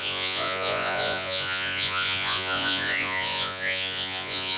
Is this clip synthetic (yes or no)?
yes